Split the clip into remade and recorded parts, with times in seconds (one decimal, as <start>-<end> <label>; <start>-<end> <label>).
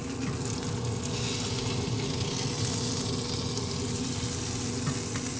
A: 0.0-5.4 recorded